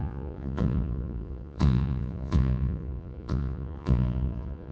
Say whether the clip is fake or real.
fake